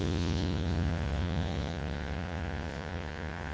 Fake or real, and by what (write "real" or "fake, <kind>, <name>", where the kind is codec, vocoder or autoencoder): fake, vocoder, Vocos